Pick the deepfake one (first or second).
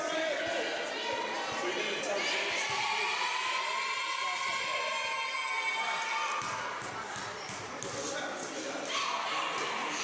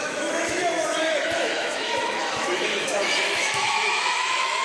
second